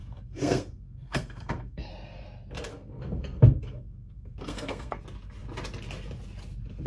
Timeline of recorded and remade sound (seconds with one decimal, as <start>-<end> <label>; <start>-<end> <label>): 0.0-1.9 remade; 1.9-2.7 recorded; 2.7-5.0 remade; 5.0-6.9 recorded